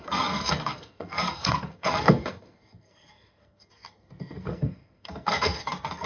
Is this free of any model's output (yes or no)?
no